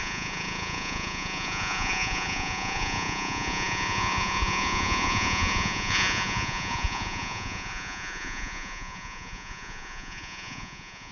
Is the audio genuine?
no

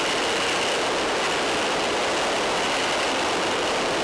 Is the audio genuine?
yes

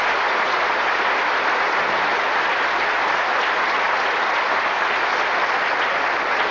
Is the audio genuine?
yes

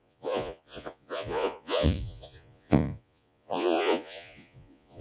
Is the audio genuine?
no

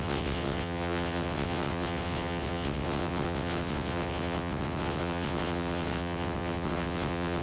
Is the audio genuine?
no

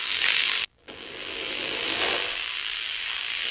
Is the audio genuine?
no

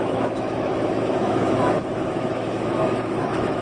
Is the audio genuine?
no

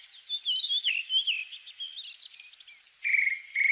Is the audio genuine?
yes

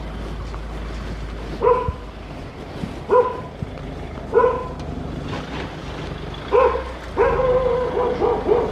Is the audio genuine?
yes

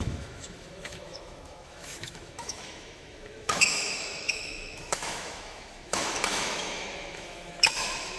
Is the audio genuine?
no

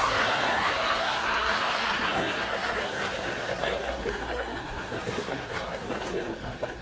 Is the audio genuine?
no